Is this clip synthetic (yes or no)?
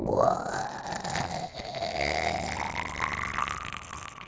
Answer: no